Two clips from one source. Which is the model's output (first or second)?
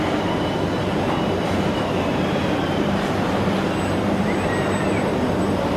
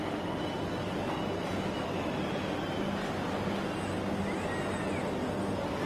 first